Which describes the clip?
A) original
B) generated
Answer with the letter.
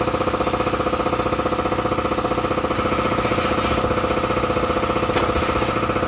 A